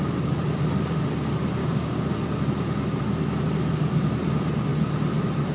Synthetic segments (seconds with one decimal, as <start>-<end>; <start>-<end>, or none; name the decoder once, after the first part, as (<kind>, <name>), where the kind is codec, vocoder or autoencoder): 1.6-2.1 (codec, DAC)